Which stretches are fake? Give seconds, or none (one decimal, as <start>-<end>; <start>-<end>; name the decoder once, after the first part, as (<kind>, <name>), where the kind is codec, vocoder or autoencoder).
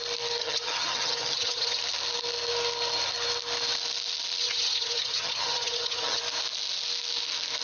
0.4-1.8 (vocoder, HiFi-GAN); 4.4-6.2